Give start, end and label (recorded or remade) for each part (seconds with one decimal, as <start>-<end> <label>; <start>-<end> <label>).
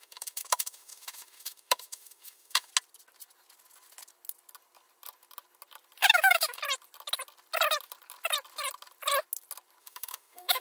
0.0-2.7 remade; 2.7-6.0 recorded; 6.0-6.6 remade; 6.6-9.8 recorded; 9.8-10.6 remade